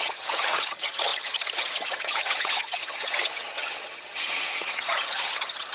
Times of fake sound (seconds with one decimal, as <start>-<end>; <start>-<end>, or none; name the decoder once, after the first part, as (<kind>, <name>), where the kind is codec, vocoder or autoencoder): 0.0-5.7 (vocoder, HiFi-GAN)